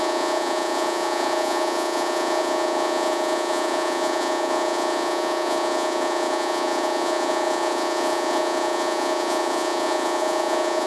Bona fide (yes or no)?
no